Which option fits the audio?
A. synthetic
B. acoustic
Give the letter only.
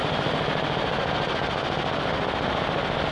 B